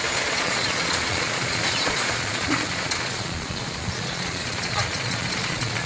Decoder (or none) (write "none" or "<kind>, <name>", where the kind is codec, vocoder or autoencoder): vocoder, Vocos